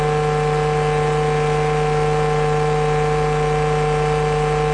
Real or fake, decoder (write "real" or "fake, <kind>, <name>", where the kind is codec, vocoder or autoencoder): real